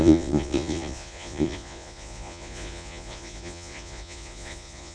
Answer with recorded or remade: remade